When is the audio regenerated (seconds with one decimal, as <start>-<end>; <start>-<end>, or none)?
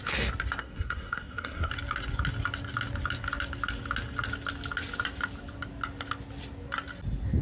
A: 0.6-1.7